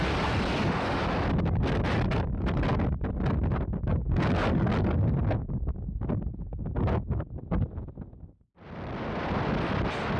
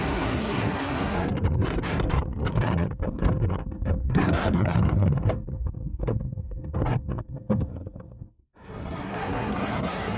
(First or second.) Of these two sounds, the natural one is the first